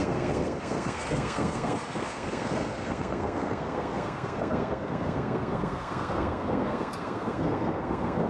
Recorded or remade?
remade